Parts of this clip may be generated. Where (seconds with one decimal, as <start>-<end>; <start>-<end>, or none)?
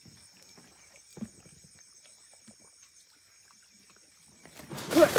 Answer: none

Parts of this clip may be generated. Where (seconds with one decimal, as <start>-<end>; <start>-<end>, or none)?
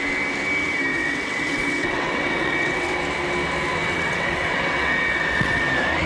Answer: 0.9-3.0; 3.8-5.6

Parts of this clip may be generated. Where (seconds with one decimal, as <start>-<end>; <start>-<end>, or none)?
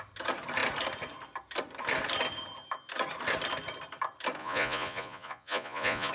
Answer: 4.4-6.1